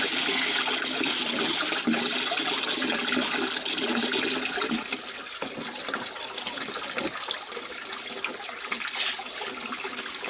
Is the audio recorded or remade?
recorded